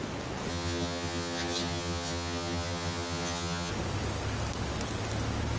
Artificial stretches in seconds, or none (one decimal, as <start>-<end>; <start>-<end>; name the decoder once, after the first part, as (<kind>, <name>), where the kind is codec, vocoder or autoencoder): 0.5-3.7 (vocoder, HiFi-GAN)